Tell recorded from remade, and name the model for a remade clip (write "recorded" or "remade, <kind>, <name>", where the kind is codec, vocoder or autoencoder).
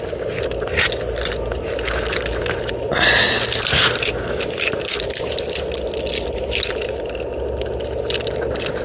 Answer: recorded